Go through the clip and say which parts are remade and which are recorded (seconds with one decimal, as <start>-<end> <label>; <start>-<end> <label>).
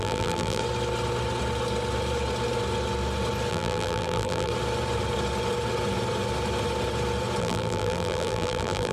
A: 0.0-0.6 remade; 0.6-3.5 recorded; 3.5-4.5 remade; 4.5-7.4 recorded; 7.4-8.9 remade